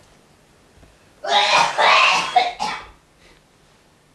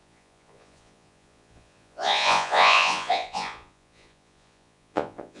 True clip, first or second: first